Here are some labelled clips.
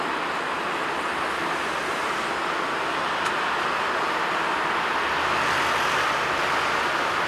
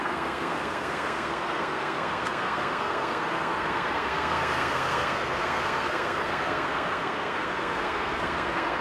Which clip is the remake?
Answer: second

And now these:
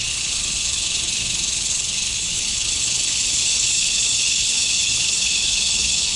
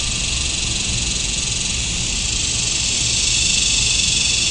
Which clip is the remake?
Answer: first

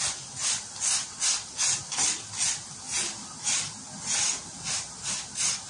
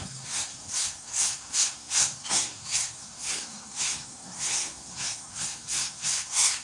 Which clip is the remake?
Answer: second